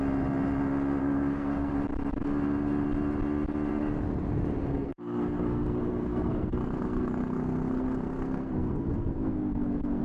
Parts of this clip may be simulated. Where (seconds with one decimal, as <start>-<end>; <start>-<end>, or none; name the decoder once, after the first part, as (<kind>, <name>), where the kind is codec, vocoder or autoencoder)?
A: 1.0-1.7 (codec, SNAC); 4.6-10.0